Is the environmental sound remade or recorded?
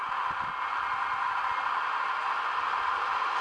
recorded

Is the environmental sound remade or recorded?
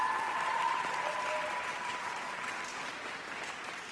recorded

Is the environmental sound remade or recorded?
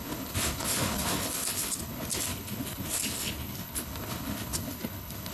remade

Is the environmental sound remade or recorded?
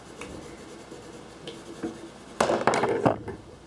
recorded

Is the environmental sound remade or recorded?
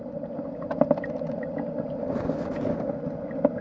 recorded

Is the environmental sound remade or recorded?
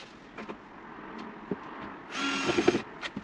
recorded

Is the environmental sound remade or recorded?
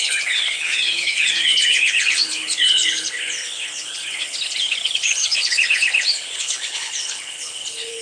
remade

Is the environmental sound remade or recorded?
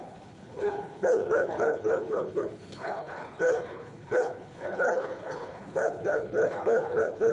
remade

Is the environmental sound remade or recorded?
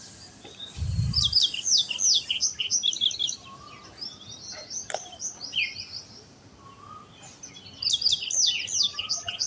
recorded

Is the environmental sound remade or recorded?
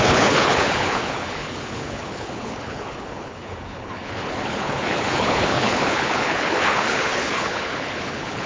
remade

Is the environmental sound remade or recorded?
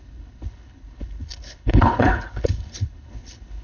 remade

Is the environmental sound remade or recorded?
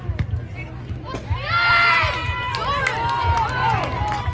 recorded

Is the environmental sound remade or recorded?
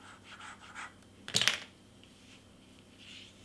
recorded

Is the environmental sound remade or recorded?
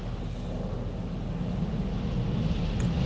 recorded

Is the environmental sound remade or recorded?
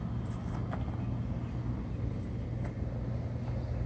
recorded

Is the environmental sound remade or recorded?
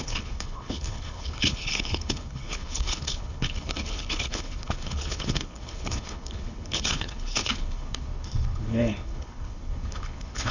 remade